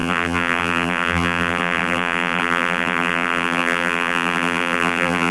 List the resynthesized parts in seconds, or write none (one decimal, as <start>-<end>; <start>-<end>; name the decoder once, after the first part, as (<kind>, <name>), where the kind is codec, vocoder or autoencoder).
0.0-5.3 (vocoder, BigVGAN v2)